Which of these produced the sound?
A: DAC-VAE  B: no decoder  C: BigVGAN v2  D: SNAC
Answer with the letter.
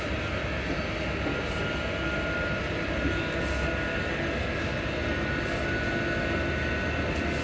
B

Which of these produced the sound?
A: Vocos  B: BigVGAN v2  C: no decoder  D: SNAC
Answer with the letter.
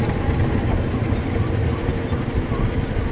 C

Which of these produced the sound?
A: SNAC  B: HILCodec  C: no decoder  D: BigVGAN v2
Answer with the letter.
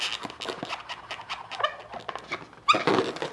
C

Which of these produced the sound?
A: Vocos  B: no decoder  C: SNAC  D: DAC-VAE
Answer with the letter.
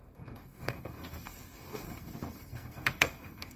C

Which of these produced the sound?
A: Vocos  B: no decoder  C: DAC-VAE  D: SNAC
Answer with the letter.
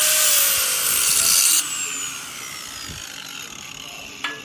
B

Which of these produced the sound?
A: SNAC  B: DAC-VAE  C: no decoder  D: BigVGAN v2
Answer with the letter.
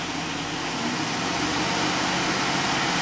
C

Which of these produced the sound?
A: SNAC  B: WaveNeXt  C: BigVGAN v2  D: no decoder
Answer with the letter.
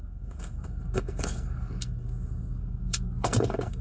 A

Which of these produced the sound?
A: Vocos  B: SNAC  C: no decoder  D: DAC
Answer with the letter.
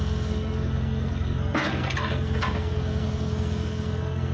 B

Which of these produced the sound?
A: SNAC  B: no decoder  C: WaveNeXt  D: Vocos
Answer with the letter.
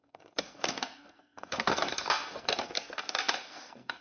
A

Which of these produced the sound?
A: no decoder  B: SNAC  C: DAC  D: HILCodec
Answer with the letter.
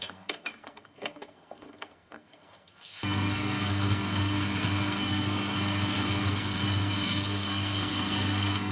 B